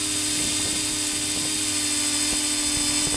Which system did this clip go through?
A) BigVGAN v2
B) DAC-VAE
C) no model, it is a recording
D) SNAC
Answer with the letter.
C